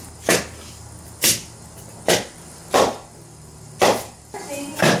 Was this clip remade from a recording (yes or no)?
no